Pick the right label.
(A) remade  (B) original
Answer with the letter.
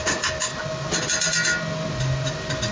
B